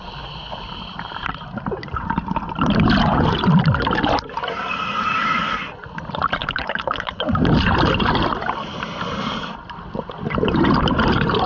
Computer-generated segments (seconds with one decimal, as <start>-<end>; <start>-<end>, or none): 6.4-7.2